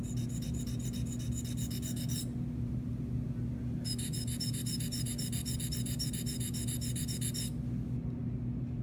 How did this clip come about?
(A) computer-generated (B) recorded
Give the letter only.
B